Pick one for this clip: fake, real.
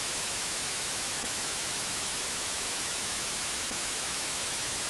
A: fake